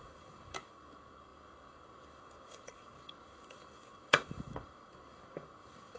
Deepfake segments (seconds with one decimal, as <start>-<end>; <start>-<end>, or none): 0.0-6.0